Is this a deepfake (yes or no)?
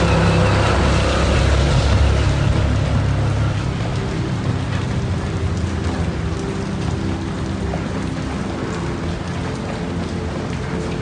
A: no